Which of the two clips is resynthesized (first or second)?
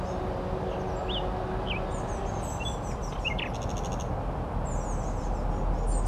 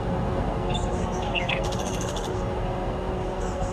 second